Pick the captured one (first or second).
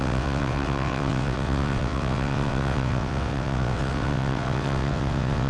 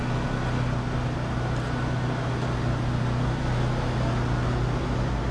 second